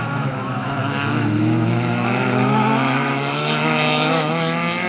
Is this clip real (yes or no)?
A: no